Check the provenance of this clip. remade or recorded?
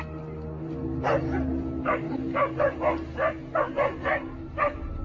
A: recorded